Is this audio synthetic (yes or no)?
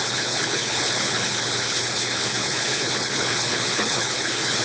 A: yes